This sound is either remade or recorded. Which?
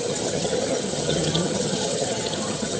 remade